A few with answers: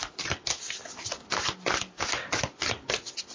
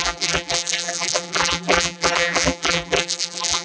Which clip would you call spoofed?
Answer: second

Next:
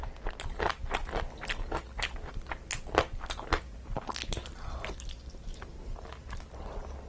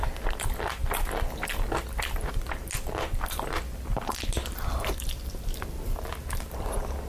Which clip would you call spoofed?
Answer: second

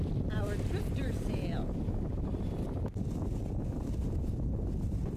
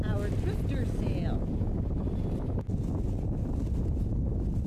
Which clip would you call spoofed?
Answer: first